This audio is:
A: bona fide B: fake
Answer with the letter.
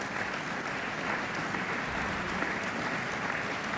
A